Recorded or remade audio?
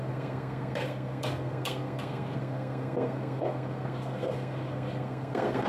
remade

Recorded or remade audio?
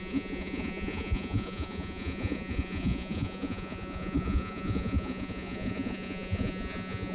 remade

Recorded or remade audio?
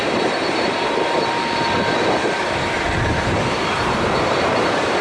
remade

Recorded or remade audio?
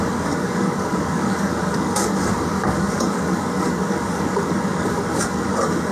remade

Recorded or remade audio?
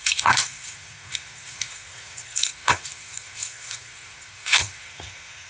remade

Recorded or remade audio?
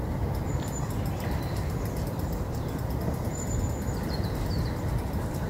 remade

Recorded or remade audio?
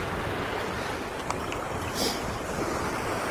recorded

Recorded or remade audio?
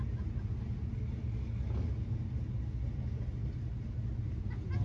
recorded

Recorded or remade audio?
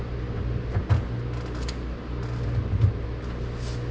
recorded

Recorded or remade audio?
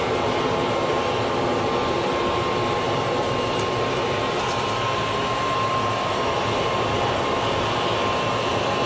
recorded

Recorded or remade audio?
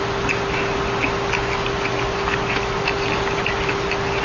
recorded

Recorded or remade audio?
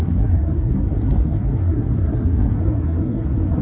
remade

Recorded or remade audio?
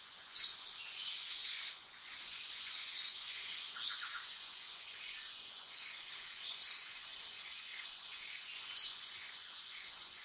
remade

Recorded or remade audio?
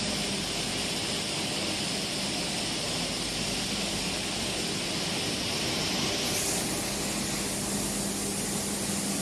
recorded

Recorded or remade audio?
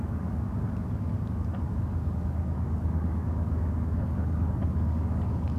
remade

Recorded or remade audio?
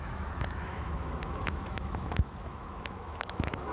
remade